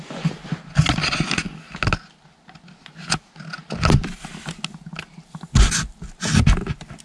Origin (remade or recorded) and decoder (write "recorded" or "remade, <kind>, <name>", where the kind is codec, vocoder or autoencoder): recorded